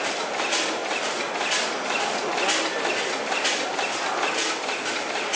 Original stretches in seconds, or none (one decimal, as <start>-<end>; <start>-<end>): 0.0-5.4